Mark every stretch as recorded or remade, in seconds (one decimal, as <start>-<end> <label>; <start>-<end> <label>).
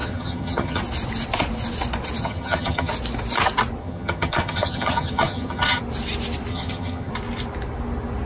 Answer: 0.0-0.8 remade; 0.8-2.2 recorded; 2.2-2.9 remade; 2.9-3.8 recorded; 3.8-5.8 remade; 5.8-6.5 recorded; 6.5-7.1 remade; 7.1-8.3 recorded